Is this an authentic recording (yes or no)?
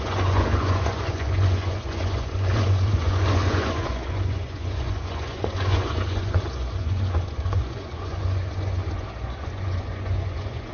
no